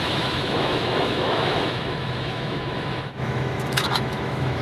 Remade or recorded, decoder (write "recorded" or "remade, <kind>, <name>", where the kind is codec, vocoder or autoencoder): remade, autoencoder, DAC-VAE